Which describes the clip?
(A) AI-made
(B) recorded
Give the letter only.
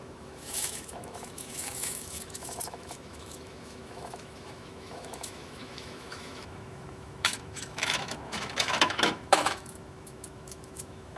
A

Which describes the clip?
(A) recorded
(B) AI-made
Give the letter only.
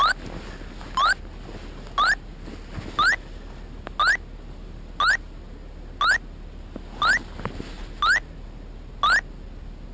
A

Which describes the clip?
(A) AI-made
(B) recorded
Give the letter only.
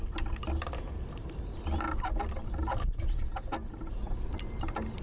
B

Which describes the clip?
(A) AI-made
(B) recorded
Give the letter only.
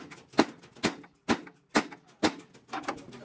B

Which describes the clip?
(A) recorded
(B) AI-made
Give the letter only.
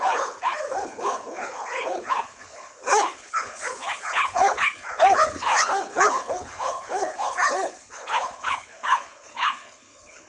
B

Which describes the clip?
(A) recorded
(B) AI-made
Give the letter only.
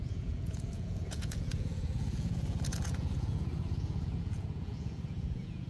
B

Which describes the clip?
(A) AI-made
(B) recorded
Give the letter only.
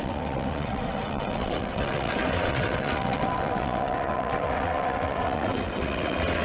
A